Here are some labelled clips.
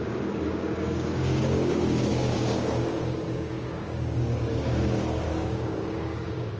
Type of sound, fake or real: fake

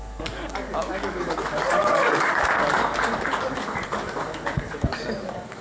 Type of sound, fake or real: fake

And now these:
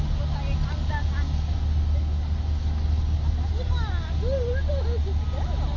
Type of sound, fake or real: real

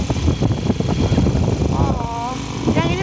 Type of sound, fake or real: real